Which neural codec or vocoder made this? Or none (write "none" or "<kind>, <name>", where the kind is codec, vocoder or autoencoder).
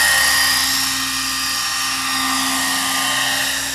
none